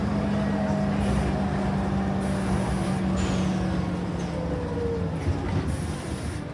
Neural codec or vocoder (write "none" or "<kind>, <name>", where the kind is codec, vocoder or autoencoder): none